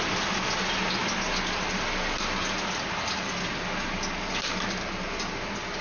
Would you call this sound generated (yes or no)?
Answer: no